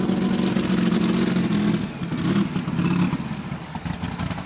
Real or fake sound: real